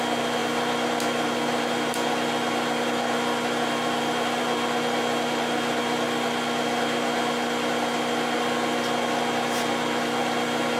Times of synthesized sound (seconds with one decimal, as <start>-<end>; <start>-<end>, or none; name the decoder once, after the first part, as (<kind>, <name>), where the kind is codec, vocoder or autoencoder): none